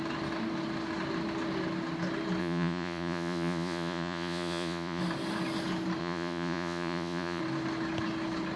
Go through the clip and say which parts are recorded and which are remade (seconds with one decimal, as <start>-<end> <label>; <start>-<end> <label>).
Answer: 0.0-2.4 recorded; 2.4-5.0 remade; 5.0-6.0 recorded; 6.0-7.4 remade; 7.4-8.6 recorded